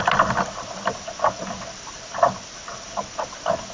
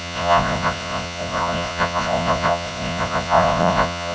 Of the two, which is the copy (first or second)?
second